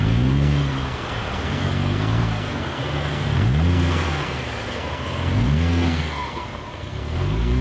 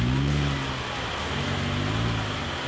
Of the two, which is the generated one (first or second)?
first